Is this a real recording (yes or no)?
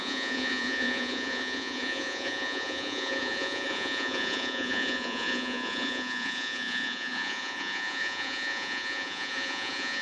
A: no